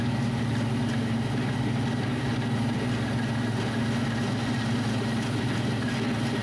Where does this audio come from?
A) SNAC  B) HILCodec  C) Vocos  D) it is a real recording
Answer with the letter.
D